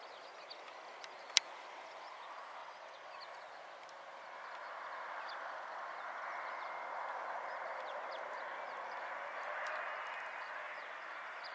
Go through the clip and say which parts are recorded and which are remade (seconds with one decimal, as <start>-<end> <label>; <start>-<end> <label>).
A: 0.0-2.6 recorded; 2.6-3.1 remade; 3.1-11.5 recorded